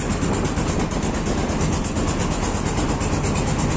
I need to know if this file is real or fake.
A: real